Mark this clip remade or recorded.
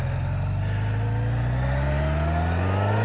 recorded